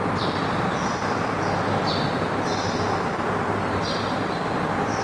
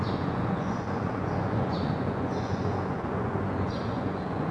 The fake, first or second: second